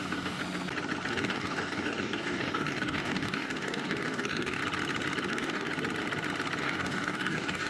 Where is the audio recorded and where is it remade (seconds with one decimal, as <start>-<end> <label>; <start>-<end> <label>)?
0.0-0.4 remade; 0.4-1.1 recorded; 1.1-4.6 remade; 4.6-5.3 recorded; 5.3-5.7 remade; 5.7-6.6 recorded; 6.6-7.7 remade

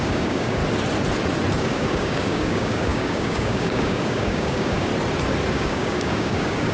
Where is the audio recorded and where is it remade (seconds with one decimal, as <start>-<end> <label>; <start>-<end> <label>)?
0.0-0.6 remade; 0.6-1.6 recorded; 1.6-4.9 remade; 4.9-5.5 recorded; 5.5-6.7 remade

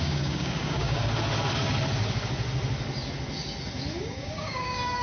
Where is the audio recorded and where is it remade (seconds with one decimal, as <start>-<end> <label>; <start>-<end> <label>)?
0.0-1.0 remade; 1.0-4.0 recorded; 4.0-5.0 remade

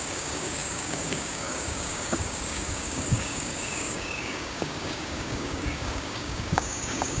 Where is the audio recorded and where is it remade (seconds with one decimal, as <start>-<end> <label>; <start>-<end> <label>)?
0.0-7.2 remade

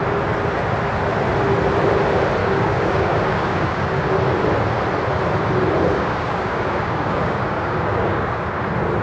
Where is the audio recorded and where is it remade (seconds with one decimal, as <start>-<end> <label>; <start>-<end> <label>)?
0.0-2.4 recorded; 2.4-4.1 remade; 4.1-5.9 recorded; 5.9-8.6 remade; 8.6-9.0 recorded

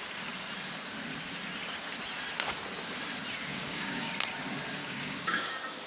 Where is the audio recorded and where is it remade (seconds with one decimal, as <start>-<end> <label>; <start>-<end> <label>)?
0.0-3.5 recorded; 3.5-4.1 remade; 4.1-4.8 recorded; 4.8-5.5 remade; 5.5-5.9 recorded

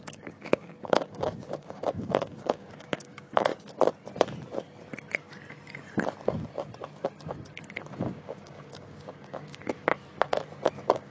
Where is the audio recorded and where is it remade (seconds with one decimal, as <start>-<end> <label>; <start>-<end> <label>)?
0.0-3.5 remade; 3.5-8.1 recorded; 8.1-9.9 remade; 9.9-10.7 recorded; 10.7-11.1 remade